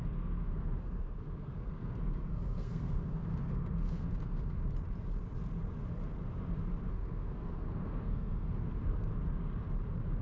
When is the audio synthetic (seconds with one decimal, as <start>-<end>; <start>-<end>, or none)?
0.0-4.6; 6.9-9.1